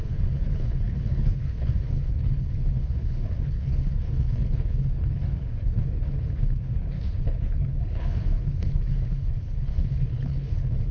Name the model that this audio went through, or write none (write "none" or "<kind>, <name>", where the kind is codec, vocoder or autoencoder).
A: codec, HILCodec